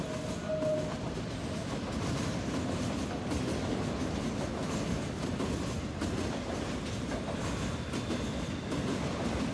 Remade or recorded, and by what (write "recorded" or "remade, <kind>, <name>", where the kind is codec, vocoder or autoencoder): recorded